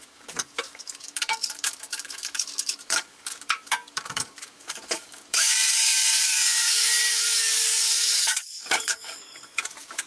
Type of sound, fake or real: fake